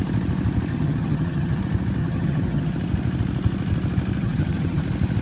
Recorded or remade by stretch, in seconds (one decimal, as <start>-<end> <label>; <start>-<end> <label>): 0.0-0.7 recorded; 0.7-1.6 remade; 1.6-2.0 recorded; 2.0-2.7 remade; 2.7-4.2 recorded; 4.2-4.8 remade; 4.8-5.2 recorded

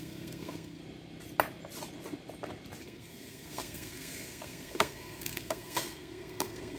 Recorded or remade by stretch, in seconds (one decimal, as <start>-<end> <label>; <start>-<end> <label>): 0.0-0.8 remade; 0.8-2.8 recorded; 2.8-6.8 remade

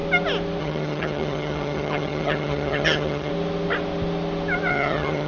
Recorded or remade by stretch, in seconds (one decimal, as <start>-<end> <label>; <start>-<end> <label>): 0.0-0.6 recorded; 0.6-3.3 remade; 3.3-4.7 recorded; 4.7-5.3 remade

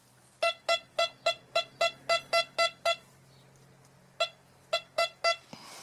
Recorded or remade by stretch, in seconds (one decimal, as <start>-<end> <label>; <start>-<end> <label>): 0.0-5.8 recorded

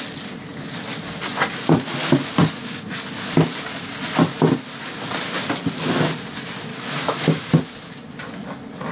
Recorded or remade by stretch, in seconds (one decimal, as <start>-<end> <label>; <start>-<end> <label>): 0.0-6.7 recorded; 6.7-7.5 remade; 7.5-8.9 recorded